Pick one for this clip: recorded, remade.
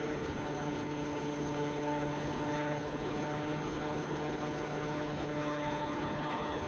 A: remade